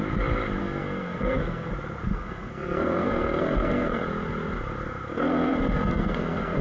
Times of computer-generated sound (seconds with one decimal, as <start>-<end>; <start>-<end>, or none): 0.6-1.7; 2.1-4.0; 5.1-6.6